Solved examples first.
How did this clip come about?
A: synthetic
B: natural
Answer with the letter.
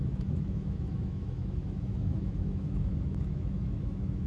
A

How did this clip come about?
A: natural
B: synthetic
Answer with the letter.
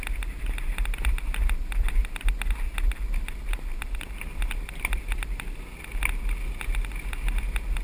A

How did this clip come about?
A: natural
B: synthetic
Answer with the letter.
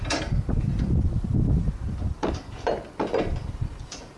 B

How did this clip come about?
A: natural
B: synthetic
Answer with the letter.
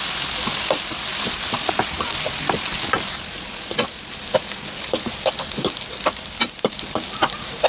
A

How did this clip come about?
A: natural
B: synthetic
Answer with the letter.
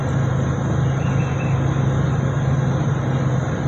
A